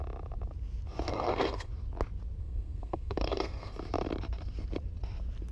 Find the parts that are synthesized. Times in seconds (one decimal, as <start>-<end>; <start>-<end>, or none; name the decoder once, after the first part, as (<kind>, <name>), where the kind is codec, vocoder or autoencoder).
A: 1.1-1.7 (codec, SNAC); 2.4-3.7